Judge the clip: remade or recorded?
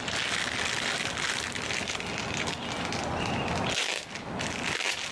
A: recorded